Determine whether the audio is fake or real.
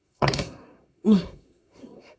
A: fake